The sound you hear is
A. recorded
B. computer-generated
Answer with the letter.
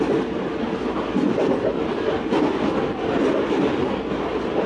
A